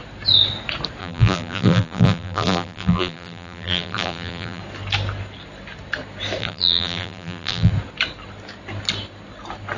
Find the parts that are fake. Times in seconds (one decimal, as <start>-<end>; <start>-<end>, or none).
1.0-4.6; 6.4-7.7